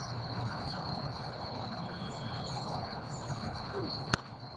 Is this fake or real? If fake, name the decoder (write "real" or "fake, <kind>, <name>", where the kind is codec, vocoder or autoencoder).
fake, codec, HILCodec